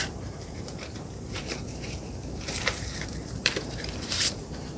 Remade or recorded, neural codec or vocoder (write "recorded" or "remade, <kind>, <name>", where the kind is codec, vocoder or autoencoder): remade, vocoder, BigVGAN v2